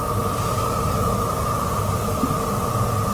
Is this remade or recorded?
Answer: recorded